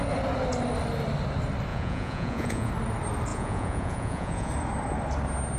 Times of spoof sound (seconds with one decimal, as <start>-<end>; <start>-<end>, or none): 1.7-2.7; 3.3-4.5